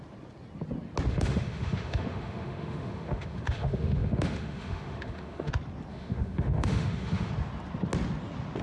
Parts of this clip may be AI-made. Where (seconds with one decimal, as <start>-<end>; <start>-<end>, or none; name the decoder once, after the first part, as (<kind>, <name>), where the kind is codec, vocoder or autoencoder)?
1.1-5.5 (autoencoder, DAC-VAE); 5.9-7.3